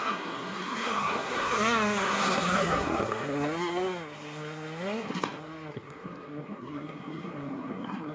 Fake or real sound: fake